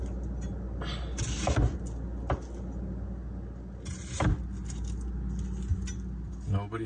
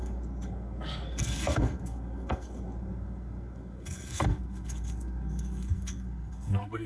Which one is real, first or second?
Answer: first